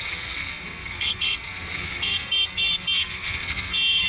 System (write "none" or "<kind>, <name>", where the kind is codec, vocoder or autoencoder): codec, SNAC